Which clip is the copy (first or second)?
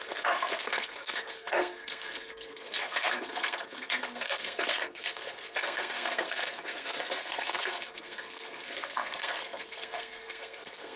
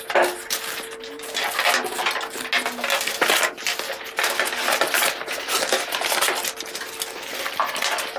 first